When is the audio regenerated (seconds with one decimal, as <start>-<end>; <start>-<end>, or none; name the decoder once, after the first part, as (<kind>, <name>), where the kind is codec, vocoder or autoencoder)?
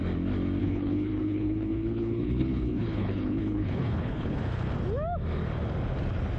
0.6-4.4 (codec, HILCodec)